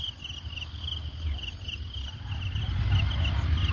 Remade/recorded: recorded